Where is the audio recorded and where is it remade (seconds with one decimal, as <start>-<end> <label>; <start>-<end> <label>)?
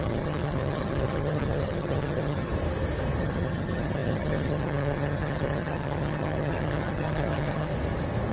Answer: 0.0-2.5 remade; 2.5-3.2 recorded; 3.2-7.7 remade; 7.7-8.3 recorded